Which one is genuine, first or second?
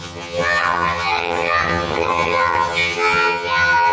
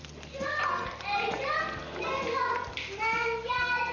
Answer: second